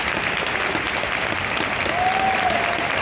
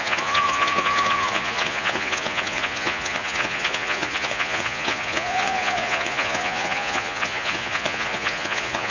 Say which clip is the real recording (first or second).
first